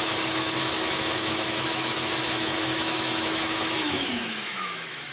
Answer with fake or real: fake